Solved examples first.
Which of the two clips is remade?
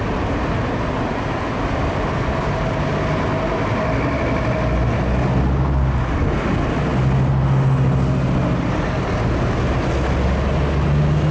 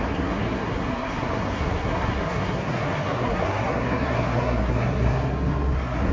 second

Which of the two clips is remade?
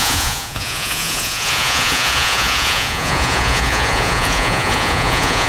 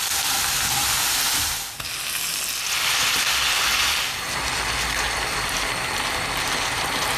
first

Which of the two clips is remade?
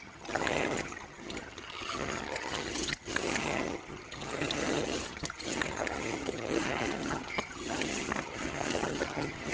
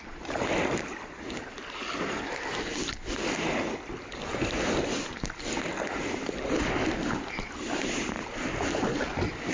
first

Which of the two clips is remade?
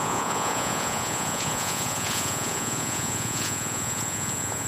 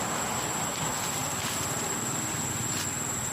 first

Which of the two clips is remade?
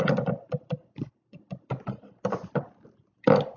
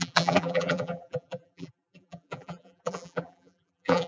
second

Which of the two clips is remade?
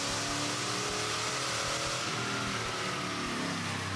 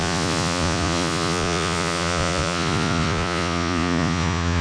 second